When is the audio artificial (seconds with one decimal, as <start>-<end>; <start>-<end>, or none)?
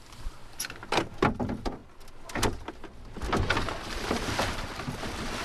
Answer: 0.0-0.4; 1.4-1.8; 3.9-5.4